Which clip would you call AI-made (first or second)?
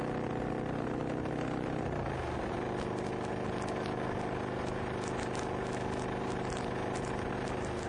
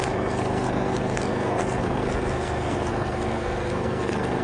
second